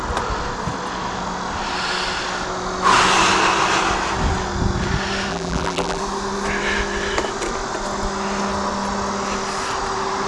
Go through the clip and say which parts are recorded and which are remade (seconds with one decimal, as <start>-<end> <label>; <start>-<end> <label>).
0.0-5.3 recorded; 5.3-6.0 remade; 6.0-10.3 recorded